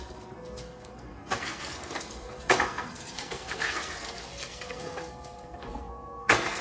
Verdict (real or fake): fake